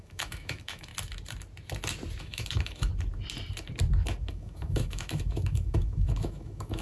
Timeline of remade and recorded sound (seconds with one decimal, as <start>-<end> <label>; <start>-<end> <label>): 0.0-0.9 remade; 0.9-2.2 recorded; 2.2-2.9 remade; 2.9-4.3 recorded; 4.3-6.8 remade

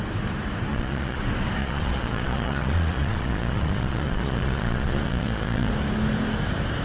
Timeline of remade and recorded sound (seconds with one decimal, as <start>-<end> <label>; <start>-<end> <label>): 0.0-0.7 recorded; 0.7-1.2 remade; 1.2-1.6 recorded; 1.6-5.7 remade; 5.7-6.8 recorded

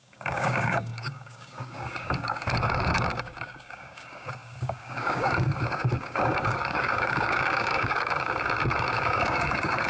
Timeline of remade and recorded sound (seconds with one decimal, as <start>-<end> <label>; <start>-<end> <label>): 0.0-9.9 remade